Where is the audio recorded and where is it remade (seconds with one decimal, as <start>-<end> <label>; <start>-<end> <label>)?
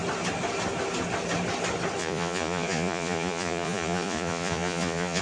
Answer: 0.0-2.0 recorded; 2.0-5.2 remade